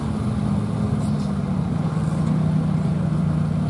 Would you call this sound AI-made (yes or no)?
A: no